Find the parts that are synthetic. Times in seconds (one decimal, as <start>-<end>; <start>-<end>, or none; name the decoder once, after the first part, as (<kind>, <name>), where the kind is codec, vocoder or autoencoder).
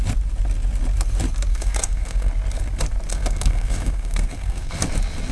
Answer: 1.5-2.3 (codec, SNAC); 3.1-4.8